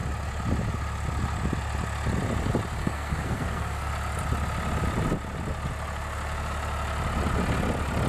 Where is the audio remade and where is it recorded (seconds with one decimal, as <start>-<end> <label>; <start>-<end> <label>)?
0.0-2.8 recorded; 2.8-3.9 remade; 3.9-8.1 recorded